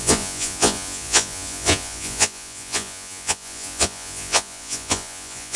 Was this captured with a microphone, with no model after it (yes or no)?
no